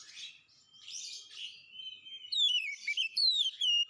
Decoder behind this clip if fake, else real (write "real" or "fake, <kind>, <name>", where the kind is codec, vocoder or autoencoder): fake, vocoder, BigVGAN v2